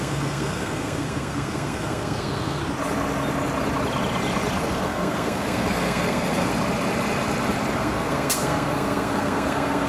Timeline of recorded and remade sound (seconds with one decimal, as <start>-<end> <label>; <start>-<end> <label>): 0.0-2.6 remade; 2.6-4.6 recorded; 4.6-6.5 remade; 6.5-7.7 recorded; 7.7-9.9 remade